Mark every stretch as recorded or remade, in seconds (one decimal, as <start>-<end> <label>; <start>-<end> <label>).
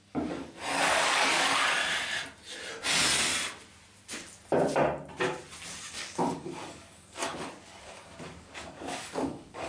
0.0-1.8 remade; 1.8-5.9 recorded; 5.9-9.7 remade